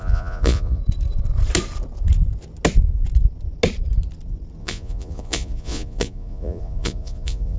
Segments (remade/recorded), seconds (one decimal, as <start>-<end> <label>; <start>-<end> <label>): 0.0-0.8 remade; 0.8-4.6 recorded; 4.6-7.6 remade